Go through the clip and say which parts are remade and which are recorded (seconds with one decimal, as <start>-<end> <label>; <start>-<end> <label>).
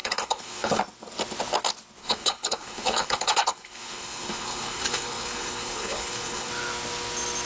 0.0-0.8 remade; 0.8-2.0 recorded; 2.0-6.5 remade; 6.5-7.5 recorded